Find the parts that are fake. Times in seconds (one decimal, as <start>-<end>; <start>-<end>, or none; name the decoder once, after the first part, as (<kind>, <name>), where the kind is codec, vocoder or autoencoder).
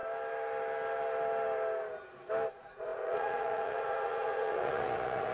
2.5-5.3 (vocoder, Vocos)